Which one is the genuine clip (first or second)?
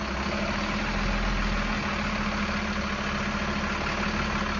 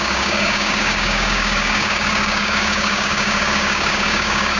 first